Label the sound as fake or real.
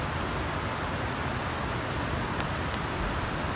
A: real